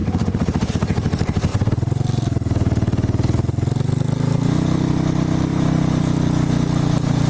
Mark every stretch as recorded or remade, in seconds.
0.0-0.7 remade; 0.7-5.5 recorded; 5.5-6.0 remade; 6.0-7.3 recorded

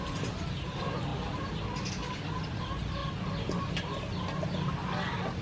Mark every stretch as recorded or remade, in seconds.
0.0-5.4 recorded